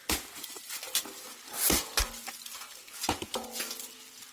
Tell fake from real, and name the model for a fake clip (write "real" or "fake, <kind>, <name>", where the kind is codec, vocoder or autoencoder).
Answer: real